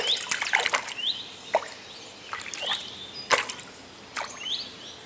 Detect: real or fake real